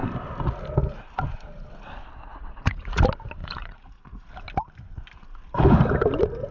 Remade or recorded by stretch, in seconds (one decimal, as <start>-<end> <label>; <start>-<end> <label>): 0.0-2.3 recorded; 2.3-3.0 remade; 3.0-3.4 recorded; 3.4-4.3 remade; 4.3-6.5 recorded